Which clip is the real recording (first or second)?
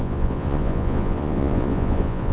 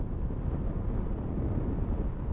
second